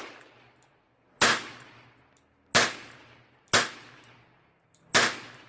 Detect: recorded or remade recorded